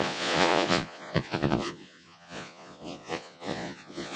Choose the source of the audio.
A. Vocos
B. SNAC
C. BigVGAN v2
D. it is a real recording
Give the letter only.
A